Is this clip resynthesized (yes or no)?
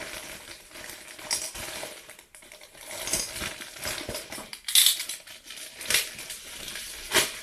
no